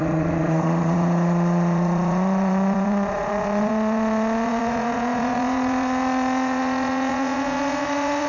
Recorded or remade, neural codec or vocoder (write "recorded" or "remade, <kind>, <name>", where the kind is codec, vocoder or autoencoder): remade, vocoder, Vocos